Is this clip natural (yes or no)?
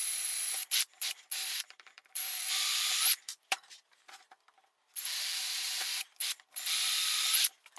no